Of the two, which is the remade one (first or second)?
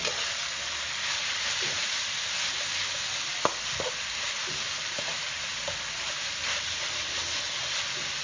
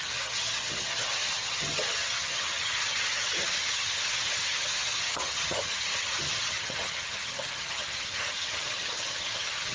second